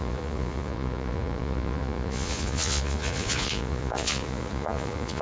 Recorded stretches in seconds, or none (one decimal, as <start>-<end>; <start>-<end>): none

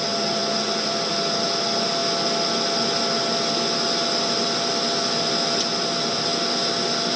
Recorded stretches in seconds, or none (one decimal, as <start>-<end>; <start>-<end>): 0.0-7.2